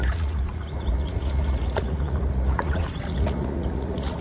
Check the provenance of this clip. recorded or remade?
remade